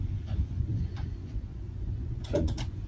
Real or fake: fake